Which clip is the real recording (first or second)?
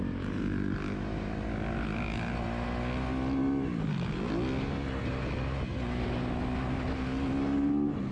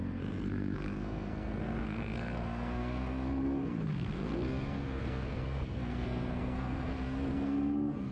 first